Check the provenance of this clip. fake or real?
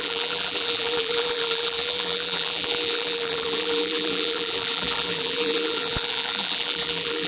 fake